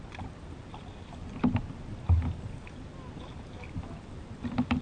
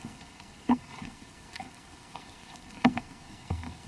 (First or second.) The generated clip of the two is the second